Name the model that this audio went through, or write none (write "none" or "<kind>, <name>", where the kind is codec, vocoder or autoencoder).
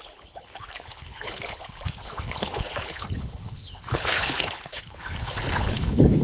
codec, HILCodec